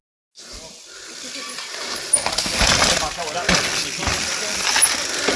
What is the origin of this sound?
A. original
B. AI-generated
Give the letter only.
A